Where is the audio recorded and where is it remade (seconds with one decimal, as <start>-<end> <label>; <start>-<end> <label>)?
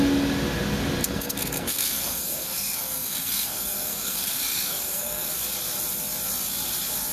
0.0-1.0 recorded; 1.0-5.3 remade; 5.3-7.1 recorded